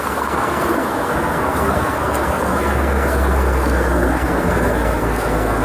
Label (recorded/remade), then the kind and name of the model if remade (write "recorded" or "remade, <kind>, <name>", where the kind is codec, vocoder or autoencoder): remade, codec, SNAC